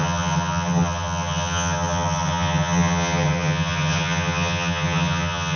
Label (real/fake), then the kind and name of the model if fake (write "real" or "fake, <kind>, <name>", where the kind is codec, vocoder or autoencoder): fake, vocoder, HiFi-GAN